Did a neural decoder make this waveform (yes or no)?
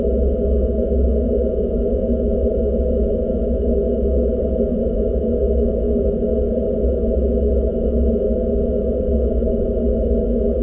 no